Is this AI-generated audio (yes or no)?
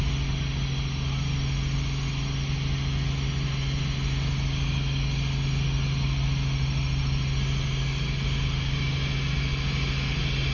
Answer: no